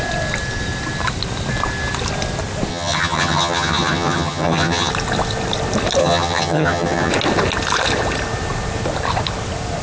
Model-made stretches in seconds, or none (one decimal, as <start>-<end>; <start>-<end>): 2.7-4.9; 6.0-7.1